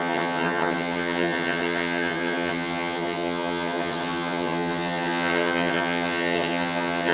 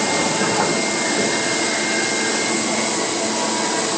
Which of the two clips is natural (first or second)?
second